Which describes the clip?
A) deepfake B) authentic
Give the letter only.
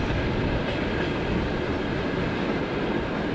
B